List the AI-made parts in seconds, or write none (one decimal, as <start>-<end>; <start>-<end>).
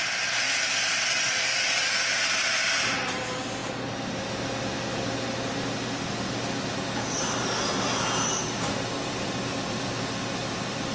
0.0-3.6; 8.4-10.9